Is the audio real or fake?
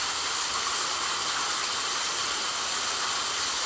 real